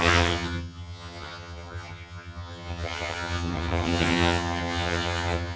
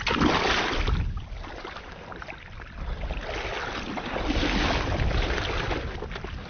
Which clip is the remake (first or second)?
first